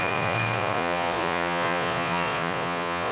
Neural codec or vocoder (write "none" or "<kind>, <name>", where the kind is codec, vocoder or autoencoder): vocoder, Vocos